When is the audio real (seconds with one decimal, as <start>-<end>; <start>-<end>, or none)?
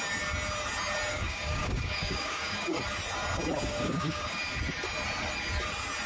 0.0-1.1; 2.8-3.7; 4.4-6.1